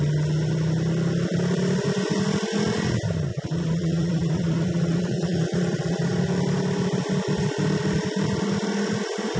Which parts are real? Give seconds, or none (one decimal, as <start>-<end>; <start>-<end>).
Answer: 0.0-3.3; 6.2-9.4